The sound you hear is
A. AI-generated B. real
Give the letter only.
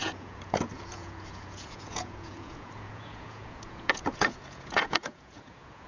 A